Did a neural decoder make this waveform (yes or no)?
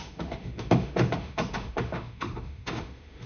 yes